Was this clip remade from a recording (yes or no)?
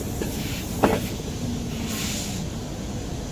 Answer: no